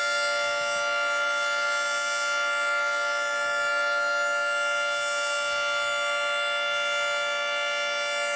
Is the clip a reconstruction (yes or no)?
no